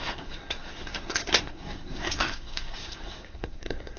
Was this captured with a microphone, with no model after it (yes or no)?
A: no